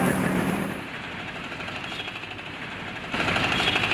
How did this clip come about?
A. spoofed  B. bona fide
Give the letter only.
A